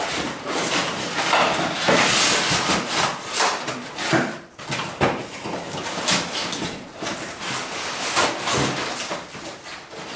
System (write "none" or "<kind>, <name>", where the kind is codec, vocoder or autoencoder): none